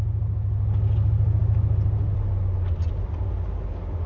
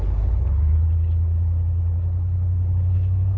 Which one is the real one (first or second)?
first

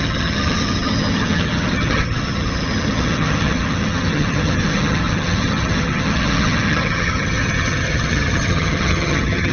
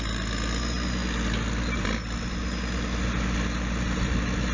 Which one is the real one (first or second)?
second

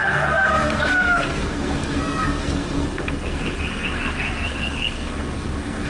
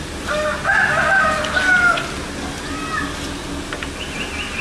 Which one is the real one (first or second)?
second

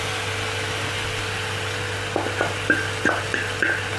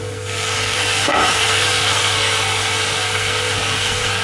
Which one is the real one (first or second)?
first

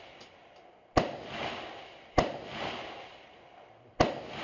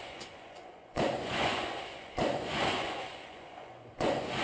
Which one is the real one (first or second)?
first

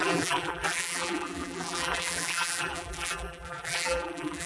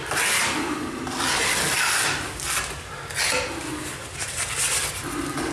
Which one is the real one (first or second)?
second